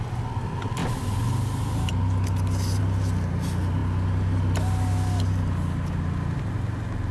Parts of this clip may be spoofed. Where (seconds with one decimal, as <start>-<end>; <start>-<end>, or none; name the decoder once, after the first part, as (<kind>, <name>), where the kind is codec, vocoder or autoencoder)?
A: none